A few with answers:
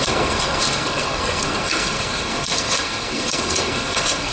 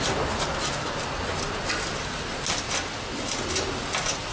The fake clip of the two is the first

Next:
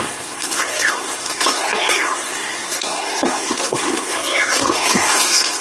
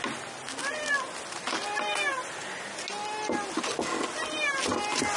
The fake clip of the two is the first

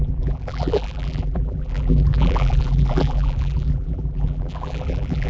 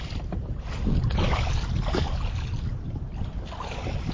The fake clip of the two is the first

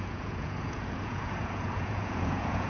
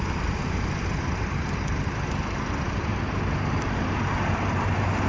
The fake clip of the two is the first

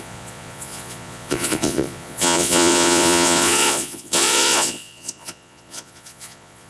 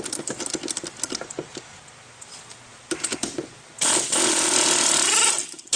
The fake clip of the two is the first